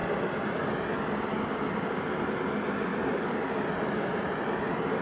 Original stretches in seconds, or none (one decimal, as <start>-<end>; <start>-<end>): 0.0-2.9; 3.7-5.0